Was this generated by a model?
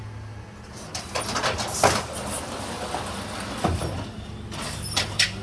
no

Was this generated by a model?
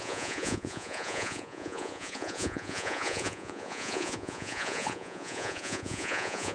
yes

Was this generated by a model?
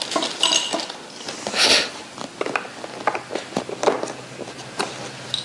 no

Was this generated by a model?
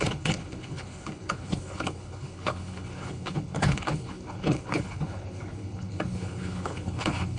yes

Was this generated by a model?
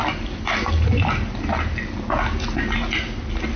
no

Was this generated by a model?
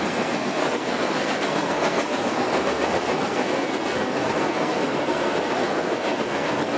yes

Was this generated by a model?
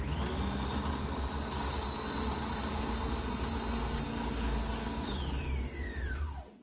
no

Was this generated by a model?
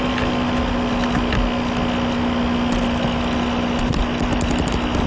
no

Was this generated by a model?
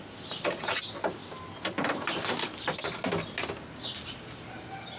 no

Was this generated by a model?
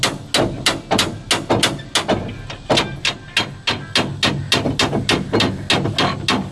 no